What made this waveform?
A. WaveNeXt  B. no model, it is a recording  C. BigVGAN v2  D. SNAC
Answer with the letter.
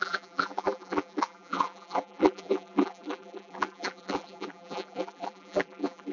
C